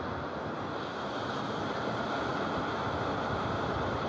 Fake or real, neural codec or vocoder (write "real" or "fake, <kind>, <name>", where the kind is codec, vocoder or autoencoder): real